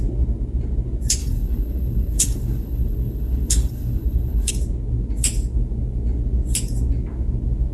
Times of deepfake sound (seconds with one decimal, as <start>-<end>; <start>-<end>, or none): 1.2-4.5